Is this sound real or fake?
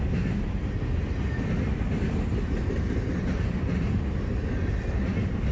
real